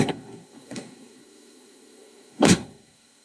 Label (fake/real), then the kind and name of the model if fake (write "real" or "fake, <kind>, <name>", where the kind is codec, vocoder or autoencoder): fake, codec, SNAC